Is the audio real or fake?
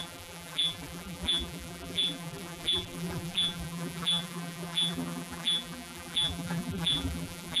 fake